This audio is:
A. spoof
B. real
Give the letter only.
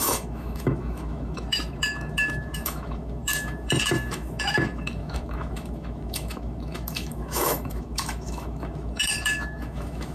A